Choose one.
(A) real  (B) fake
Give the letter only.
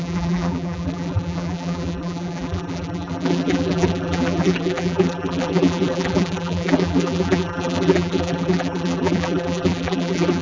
B